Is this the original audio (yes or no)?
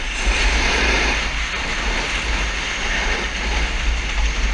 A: yes